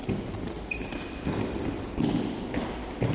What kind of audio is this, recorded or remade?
recorded